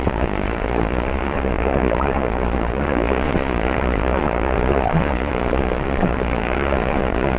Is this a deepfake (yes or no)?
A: yes